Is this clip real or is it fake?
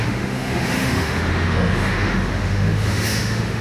fake